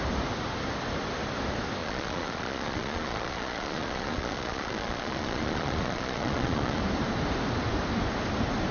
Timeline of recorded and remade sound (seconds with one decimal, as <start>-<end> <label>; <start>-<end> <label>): 0.0-1.8 recorded; 1.8-6.8 remade; 6.8-8.7 recorded